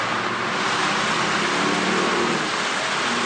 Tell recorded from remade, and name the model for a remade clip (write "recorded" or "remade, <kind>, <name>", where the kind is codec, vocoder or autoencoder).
recorded